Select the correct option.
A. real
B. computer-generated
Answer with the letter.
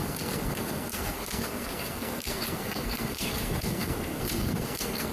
B